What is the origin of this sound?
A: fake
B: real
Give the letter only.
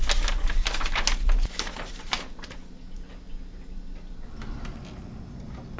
B